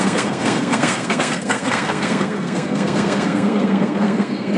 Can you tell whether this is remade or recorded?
remade